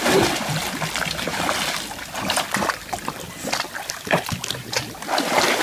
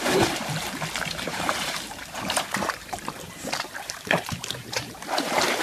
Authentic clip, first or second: first